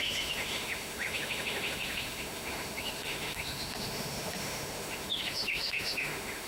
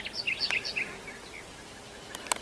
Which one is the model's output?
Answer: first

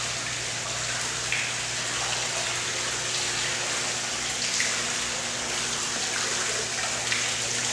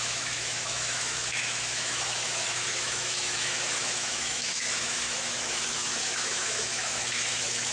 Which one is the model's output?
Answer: second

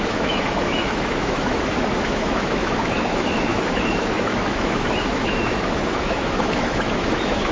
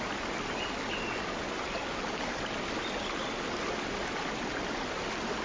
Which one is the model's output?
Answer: first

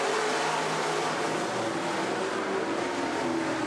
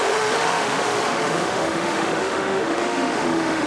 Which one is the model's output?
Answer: second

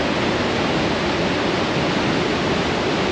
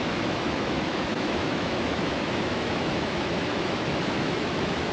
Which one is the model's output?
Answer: second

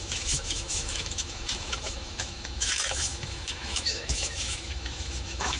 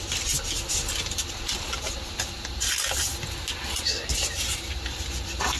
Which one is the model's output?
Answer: first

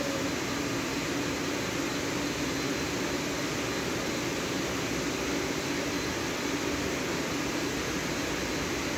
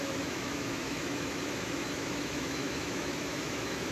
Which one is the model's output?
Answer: second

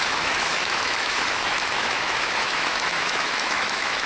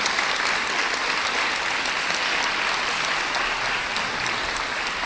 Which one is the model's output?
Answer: first